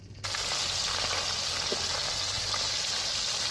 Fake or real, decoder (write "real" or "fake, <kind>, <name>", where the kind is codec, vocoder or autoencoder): real